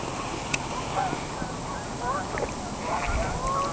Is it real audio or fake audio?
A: real